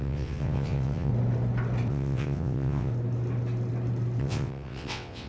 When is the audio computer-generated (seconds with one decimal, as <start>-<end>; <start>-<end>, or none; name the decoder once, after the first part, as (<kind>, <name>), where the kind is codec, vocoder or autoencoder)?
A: 0.0-1.1 (vocoder, WaveNeXt); 1.9-2.9; 4.2-5.3